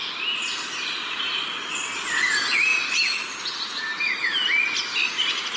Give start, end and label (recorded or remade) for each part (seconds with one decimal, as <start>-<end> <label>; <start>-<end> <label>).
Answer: 0.0-1.7 remade; 1.7-2.7 recorded; 2.7-4.2 remade; 4.2-5.6 recorded